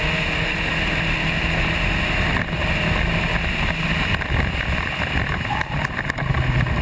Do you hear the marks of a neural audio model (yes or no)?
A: no